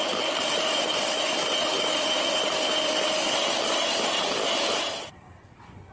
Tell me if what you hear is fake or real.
real